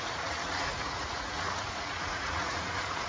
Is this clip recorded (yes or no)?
no